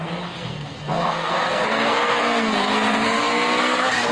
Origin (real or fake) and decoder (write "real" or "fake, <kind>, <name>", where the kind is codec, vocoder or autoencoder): fake, codec, SNAC